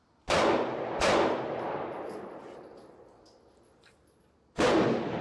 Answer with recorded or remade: recorded